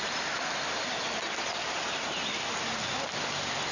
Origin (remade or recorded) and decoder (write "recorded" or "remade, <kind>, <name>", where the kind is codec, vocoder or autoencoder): recorded